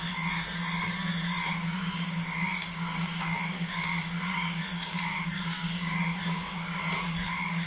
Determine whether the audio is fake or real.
fake